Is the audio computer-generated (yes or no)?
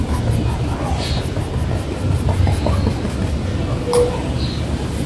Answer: no